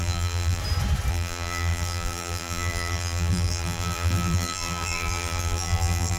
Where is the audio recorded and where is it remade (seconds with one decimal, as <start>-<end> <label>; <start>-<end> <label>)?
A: 0.0-0.6 remade; 0.6-1.1 recorded; 1.1-6.2 remade